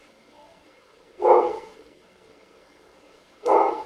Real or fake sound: fake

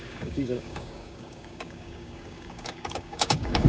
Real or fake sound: fake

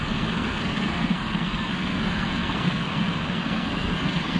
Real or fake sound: fake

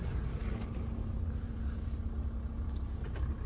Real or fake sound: real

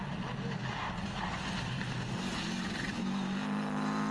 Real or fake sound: real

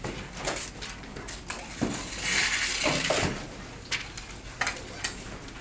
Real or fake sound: real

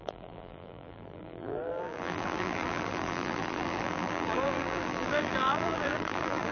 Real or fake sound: fake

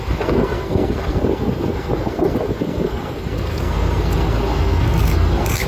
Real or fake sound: fake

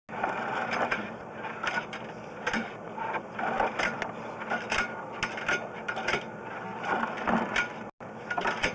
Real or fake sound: real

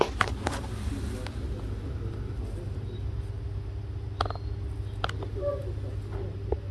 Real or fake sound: real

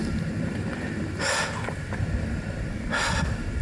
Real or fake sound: real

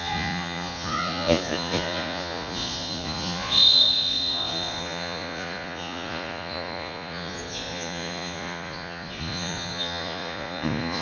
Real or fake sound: fake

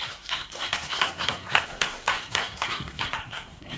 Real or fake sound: fake